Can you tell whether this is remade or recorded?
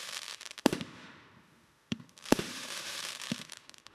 remade